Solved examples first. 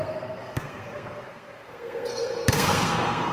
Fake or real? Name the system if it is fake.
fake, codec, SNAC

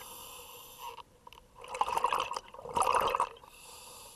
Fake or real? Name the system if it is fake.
real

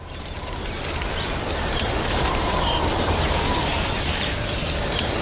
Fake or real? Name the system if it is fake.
fake, vocoder, BigVGAN v2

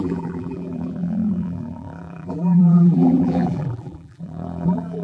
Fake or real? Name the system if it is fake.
fake, vocoder, BigVGAN v2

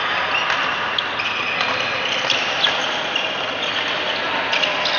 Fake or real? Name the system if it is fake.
real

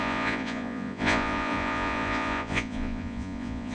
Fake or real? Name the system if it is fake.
fake, vocoder, Vocos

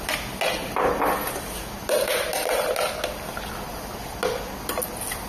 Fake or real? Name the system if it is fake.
real